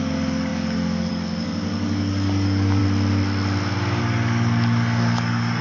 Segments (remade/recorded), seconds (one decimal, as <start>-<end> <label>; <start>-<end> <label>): 0.0-2.8 remade; 2.8-4.0 recorded; 4.0-5.6 remade